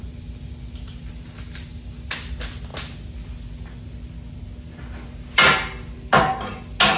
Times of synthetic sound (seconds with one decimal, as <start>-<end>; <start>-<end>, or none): none